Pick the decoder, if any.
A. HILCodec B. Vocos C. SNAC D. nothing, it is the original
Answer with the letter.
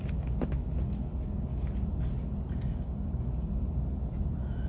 D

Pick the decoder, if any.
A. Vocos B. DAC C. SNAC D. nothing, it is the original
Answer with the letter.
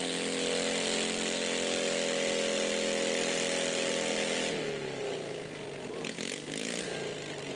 D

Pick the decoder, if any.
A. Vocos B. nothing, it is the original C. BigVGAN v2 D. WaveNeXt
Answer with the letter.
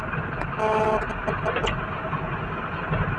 B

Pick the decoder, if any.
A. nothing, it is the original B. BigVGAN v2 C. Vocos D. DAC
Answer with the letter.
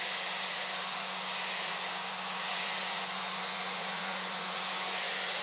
C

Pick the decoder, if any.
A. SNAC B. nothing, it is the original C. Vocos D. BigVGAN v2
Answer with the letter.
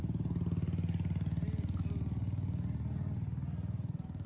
B